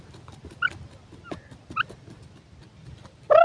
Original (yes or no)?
yes